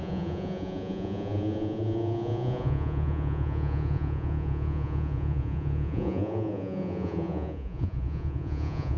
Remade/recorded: remade